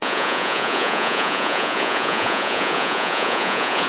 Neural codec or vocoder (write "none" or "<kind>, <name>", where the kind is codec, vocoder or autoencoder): vocoder, Vocos